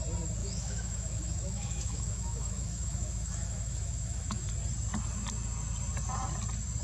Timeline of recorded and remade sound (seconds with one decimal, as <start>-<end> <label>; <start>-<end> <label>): 0.0-0.4 recorded; 0.4-4.5 remade; 4.5-6.8 recorded